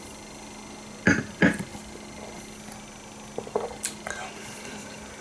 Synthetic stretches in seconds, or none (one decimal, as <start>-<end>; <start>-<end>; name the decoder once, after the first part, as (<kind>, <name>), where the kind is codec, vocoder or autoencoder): none

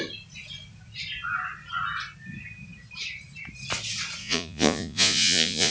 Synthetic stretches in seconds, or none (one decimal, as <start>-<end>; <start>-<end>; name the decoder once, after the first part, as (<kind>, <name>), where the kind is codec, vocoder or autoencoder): 4.2-5.7 (vocoder, Vocos)